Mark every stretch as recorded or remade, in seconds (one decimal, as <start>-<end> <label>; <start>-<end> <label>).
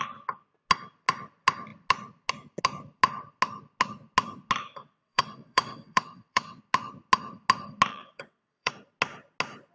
0.0-4.8 recorded; 4.8-6.6 remade; 6.6-7.9 recorded; 7.9-8.7 remade; 8.7-9.7 recorded